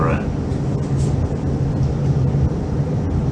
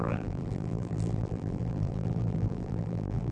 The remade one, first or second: second